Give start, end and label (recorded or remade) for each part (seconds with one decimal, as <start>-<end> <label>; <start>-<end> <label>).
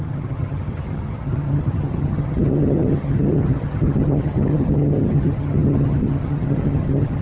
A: 0.0-7.2 remade